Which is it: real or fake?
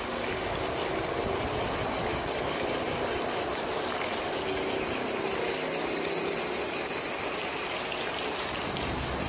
real